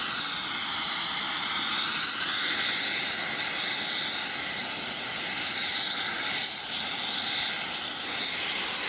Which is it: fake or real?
real